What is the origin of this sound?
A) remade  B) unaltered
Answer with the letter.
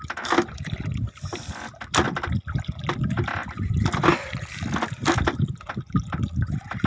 B